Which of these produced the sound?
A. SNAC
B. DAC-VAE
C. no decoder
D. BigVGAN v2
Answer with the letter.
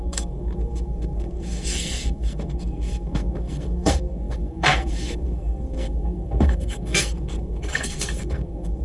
A